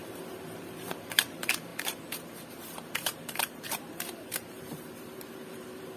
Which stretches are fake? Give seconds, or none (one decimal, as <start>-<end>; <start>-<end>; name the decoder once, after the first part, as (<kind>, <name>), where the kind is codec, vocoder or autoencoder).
0.0-6.0 (vocoder, BigVGAN v2)